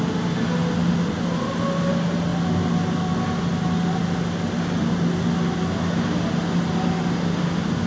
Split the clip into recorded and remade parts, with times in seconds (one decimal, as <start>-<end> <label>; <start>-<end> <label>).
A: 0.0-7.9 recorded